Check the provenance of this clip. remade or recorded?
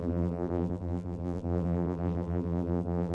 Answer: remade